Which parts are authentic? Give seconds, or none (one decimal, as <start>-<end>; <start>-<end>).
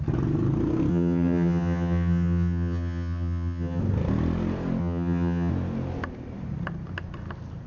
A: 0.0-0.9; 3.8-4.8; 5.5-7.7